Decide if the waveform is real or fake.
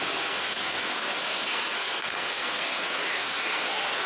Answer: fake